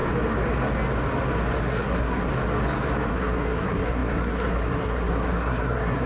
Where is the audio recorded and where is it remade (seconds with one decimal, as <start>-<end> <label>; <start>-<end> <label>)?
0.0-1.6 recorded; 1.6-2.3 remade; 2.3-3.1 recorded; 3.1-6.1 remade